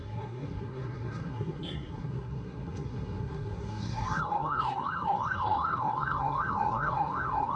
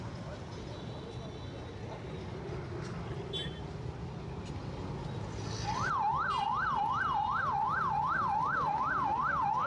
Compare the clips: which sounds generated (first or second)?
first